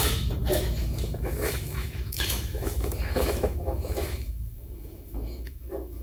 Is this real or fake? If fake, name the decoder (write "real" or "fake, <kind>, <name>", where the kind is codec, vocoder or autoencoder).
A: fake, autoencoder, DAC-VAE